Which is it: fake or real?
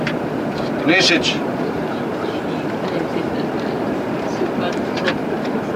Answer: real